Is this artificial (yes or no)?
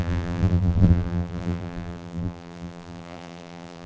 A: yes